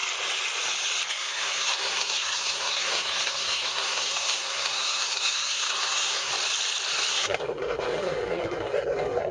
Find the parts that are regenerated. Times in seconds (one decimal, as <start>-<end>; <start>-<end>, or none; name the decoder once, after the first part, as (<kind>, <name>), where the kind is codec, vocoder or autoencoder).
1.1-6.3 (codec, SNAC); 7.1-9.3